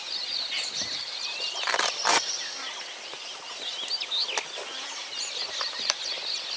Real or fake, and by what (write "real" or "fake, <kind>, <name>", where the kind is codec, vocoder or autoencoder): real